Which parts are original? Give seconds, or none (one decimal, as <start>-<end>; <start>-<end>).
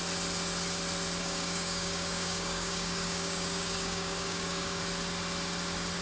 0.0-1.2; 4.8-6.0